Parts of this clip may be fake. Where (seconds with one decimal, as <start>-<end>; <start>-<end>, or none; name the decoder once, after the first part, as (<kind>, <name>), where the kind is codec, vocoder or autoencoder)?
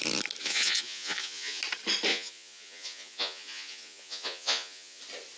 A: 0.4-1.6 (vocoder, Vocos); 2.1-5.0